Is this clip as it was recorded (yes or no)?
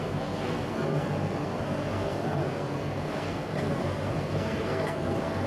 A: no